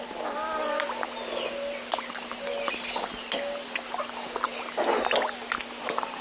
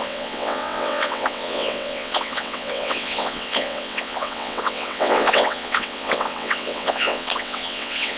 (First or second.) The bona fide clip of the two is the first